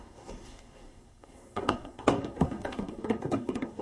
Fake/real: fake